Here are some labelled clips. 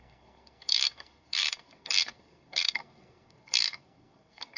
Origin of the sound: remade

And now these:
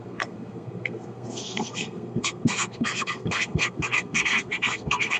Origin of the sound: remade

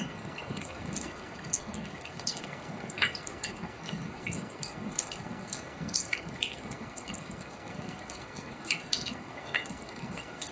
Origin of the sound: remade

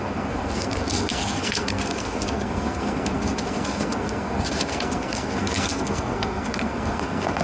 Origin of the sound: remade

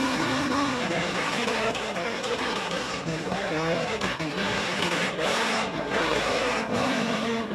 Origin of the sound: remade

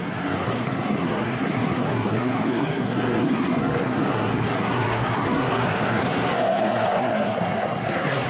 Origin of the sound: remade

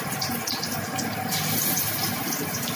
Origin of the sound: recorded